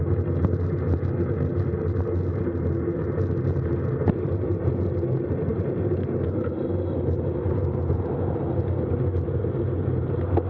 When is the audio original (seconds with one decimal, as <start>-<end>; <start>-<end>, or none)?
0.0-10.5